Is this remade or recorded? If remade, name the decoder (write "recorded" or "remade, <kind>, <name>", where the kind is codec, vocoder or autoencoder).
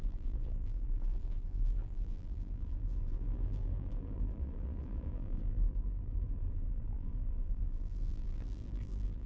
remade, vocoder, BigVGAN v2